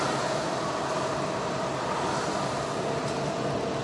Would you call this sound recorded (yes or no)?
yes